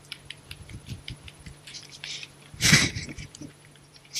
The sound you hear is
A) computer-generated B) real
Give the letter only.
A